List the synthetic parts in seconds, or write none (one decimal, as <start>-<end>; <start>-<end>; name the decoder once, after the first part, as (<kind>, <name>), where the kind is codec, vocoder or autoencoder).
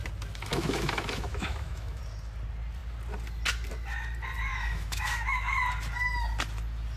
0.5-2.0 (autoencoder, DAC-VAE); 4.5-5.6